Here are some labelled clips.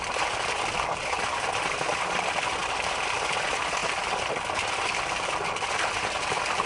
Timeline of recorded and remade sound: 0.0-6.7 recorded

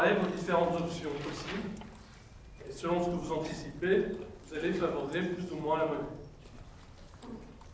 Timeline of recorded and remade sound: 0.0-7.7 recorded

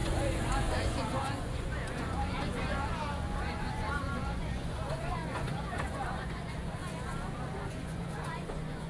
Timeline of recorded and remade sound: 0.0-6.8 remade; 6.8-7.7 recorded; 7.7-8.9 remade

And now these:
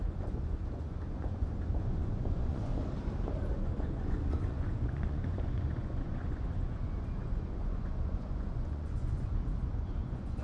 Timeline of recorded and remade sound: 0.0-2.7 remade; 2.7-3.5 recorded; 3.5-10.4 remade

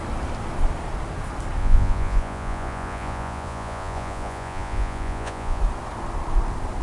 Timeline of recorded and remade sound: 0.0-1.6 recorded; 1.6-5.6 remade; 5.6-6.8 recorded

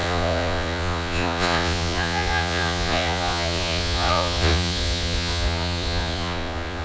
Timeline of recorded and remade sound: 0.0-6.8 remade

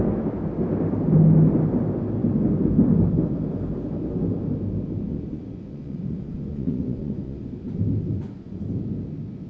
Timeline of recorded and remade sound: 0.0-5.1 recorded; 5.1-7.5 remade; 7.5-8.1 recorded; 8.1-8.6 remade; 8.6-9.5 recorded

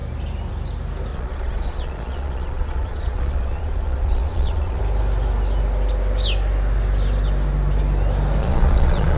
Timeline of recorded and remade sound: 0.0-1.1 recorded; 1.1-4.8 remade; 4.8-8.4 recorded; 8.4-9.2 remade